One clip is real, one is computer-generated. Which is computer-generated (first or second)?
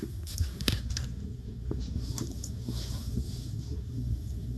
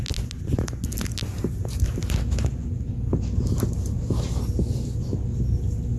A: first